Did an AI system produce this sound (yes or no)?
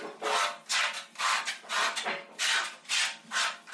no